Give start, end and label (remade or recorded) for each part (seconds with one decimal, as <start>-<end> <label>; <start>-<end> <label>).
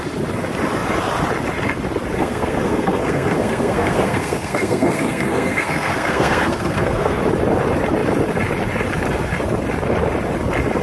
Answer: 0.0-2.2 recorded; 2.2-7.2 remade; 7.2-10.8 recorded